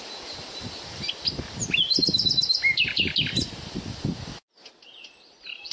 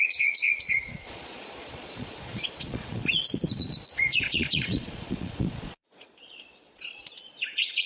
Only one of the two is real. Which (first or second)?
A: first